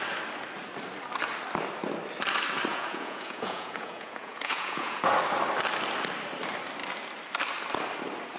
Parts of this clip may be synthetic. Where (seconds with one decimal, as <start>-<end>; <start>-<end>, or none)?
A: 2.7-5.0

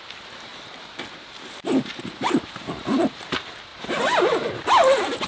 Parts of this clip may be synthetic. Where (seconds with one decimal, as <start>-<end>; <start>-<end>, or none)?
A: 0.5-3.3; 3.7-4.6

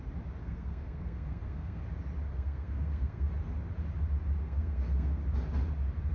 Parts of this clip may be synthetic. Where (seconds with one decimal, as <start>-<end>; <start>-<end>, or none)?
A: 0.4-1.8; 2.3-3.3; 4.4-5.2

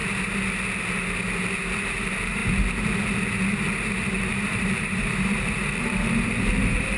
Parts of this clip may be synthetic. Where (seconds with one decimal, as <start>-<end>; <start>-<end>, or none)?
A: 2.0-2.4; 4.2-7.0

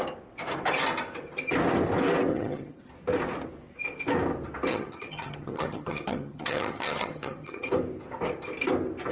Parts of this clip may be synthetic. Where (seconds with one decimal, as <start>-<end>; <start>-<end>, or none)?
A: 2.3-2.9; 4.7-7.7